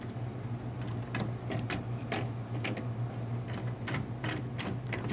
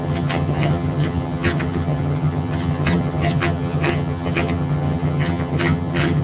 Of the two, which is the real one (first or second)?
first